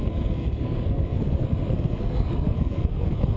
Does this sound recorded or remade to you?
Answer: remade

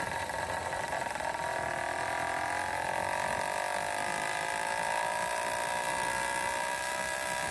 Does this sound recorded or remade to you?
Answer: recorded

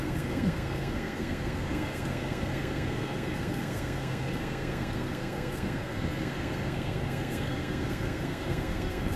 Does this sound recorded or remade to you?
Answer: remade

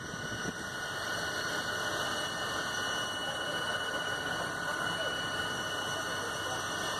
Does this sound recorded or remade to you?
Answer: recorded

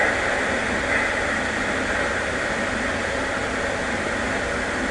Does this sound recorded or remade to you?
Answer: recorded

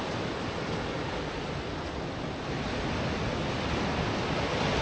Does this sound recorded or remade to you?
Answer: recorded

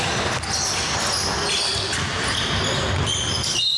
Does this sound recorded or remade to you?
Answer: recorded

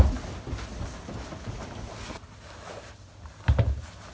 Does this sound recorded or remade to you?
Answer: recorded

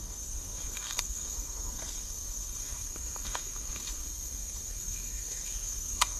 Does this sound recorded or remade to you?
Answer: remade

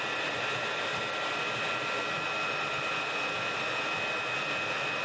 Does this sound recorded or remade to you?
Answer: recorded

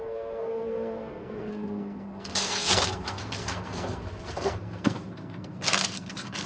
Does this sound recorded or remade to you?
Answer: remade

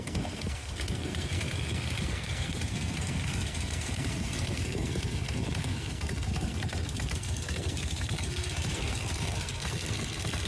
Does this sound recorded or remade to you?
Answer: remade